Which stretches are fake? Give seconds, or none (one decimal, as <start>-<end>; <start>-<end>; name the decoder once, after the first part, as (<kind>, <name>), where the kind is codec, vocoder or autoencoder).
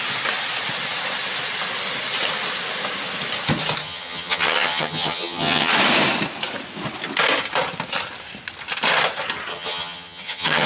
3.8-5.7 (vocoder, HiFi-GAN); 9.5-10.7